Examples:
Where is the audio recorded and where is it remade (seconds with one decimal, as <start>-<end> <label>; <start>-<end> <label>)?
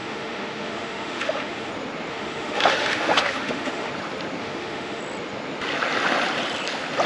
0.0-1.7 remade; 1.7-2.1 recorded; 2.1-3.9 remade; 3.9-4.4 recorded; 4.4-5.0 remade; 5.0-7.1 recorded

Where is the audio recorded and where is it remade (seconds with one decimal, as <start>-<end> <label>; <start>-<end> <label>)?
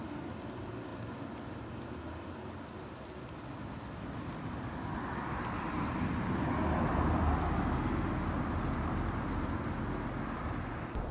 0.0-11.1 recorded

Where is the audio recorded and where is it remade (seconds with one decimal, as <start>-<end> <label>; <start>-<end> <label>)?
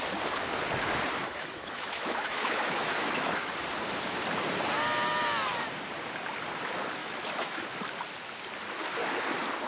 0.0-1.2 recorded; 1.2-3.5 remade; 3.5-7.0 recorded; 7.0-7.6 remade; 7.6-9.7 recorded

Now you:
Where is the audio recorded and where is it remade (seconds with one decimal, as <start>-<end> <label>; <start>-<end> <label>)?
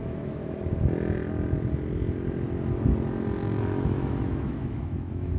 0.0-0.4 remade; 0.4-3.6 recorded; 3.6-5.4 remade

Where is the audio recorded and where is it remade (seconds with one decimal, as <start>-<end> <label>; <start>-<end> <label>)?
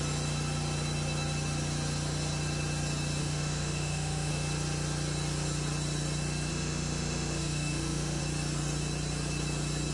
0.0-3.2 recorded; 3.2-4.3 remade; 4.3-6.5 recorded; 6.5-8.2 remade; 8.2-9.9 recorded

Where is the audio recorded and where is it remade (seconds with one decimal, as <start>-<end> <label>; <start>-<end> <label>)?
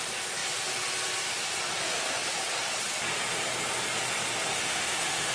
0.0-4.5 recorded; 4.5-5.3 remade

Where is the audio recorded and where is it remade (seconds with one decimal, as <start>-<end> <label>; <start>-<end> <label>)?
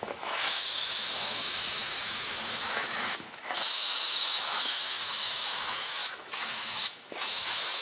0.0-7.8 remade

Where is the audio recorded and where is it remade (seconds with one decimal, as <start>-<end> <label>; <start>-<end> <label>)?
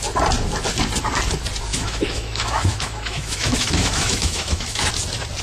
0.0-1.7 recorded; 1.7-4.9 remade; 4.9-5.4 recorded